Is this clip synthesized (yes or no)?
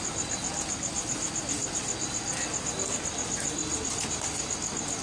no